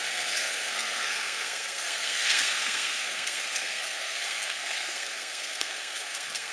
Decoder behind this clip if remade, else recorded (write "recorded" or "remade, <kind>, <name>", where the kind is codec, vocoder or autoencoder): remade, codec, SNAC